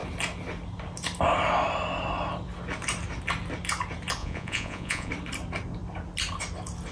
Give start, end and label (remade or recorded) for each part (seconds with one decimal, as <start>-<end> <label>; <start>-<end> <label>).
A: 0.0-4.2 recorded; 4.2-5.1 remade; 5.1-6.9 recorded